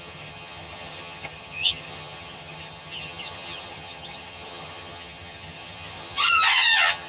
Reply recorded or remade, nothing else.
remade